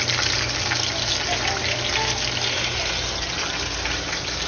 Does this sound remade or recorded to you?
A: recorded